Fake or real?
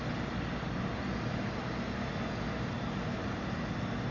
real